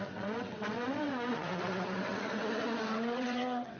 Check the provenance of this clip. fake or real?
fake